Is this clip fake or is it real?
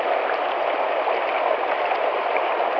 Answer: real